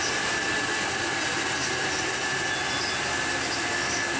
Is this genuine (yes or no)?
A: yes